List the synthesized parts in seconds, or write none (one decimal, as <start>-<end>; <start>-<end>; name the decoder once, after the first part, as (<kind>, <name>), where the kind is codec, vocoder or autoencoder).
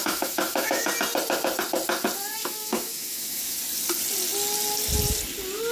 0.0-0.9 (autoencoder, DAC-VAE); 2.4-3.6